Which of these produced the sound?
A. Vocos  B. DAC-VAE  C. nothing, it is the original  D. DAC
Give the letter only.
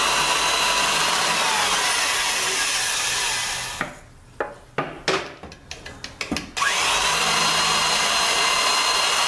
C